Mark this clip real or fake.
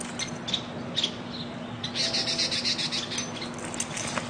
real